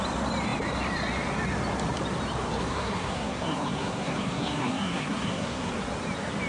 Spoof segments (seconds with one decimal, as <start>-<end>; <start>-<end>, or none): 2.6-5.7